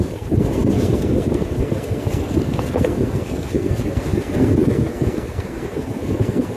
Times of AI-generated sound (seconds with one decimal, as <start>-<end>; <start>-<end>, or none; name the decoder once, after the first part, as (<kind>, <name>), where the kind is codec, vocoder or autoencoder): 0.0-6.6 (codec, SNAC)